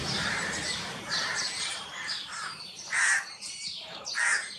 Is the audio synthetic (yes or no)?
yes